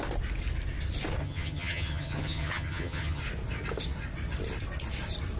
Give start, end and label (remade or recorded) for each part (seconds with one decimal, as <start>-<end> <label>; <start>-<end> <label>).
0.0-1.2 recorded; 1.2-3.2 remade; 3.2-5.4 recorded